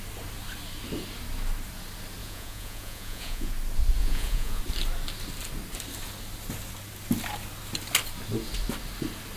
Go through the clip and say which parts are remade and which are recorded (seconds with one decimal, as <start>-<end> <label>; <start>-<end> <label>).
0.0-2.2 recorded; 2.2-3.5 remade; 3.5-4.0 recorded; 4.0-4.6 remade; 4.6-9.4 recorded

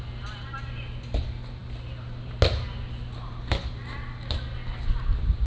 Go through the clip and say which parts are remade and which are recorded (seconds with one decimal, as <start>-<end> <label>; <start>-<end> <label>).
0.0-5.5 recorded

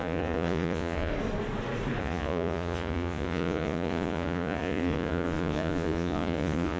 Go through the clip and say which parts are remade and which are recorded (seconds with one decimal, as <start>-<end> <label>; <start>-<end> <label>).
0.0-1.1 remade; 1.1-2.0 recorded; 2.0-6.8 remade

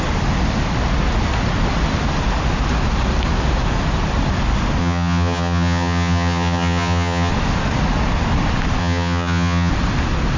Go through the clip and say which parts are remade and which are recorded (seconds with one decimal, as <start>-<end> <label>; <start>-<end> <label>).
0.0-4.8 recorded; 4.8-7.3 remade; 7.3-8.8 recorded; 8.8-9.7 remade; 9.7-10.4 recorded

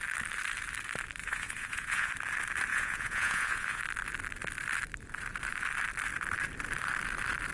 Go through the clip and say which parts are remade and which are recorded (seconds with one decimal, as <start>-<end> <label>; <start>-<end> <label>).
0.0-1.2 recorded; 1.2-2.1 remade; 2.1-2.7 recorded; 2.7-3.8 remade; 3.8-7.5 recorded

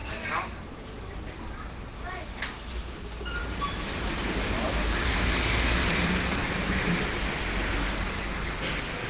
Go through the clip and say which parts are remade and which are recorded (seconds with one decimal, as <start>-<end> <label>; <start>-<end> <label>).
0.0-1.4 remade; 1.4-3.4 recorded; 3.4-5.3 remade; 5.3-5.8 recorded; 5.8-7.1 remade; 7.1-9.1 recorded

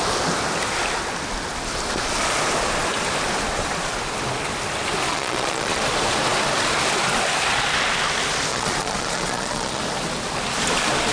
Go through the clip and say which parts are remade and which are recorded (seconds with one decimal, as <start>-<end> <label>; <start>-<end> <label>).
0.0-5.1 recorded; 5.1-5.8 remade; 5.8-8.5 recorded; 8.5-9.8 remade; 9.8-11.1 recorded

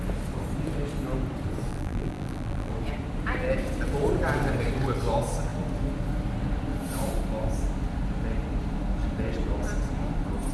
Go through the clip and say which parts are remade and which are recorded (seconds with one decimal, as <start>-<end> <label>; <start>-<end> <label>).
0.0-1.7 recorded; 1.7-2.7 remade; 2.7-10.5 recorded